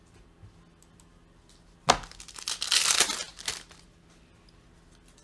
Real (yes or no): yes